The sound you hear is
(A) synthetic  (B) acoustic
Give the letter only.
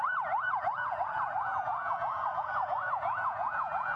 A